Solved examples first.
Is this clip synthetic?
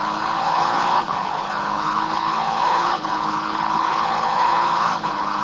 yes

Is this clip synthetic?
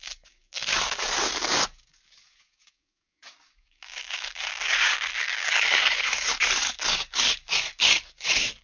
yes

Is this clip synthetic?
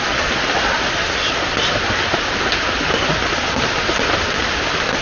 no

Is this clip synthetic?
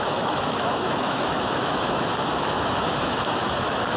yes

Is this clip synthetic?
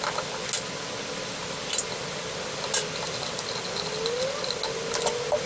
no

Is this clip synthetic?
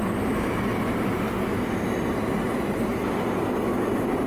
no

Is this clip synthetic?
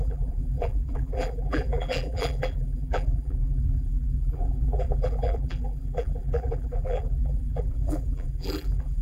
yes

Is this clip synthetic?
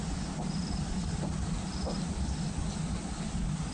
no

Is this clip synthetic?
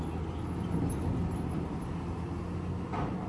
no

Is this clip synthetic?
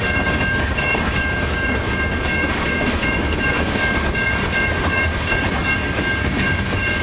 yes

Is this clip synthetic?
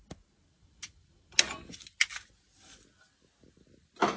no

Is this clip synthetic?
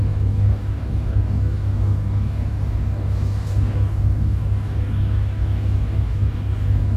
yes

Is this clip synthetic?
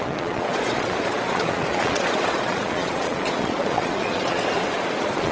yes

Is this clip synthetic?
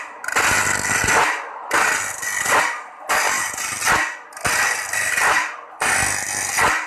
no